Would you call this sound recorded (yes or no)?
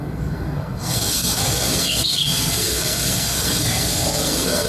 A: no